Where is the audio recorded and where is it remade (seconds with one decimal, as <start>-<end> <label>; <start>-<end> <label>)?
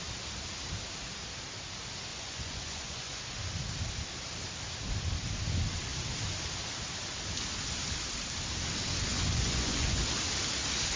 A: 0.0-2.1 recorded; 2.1-3.2 remade; 3.2-9.1 recorded; 9.1-10.0 remade; 10.0-11.0 recorded